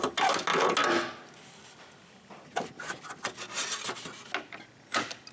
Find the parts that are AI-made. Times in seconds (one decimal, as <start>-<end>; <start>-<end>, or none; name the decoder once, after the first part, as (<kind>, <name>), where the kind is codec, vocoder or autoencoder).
none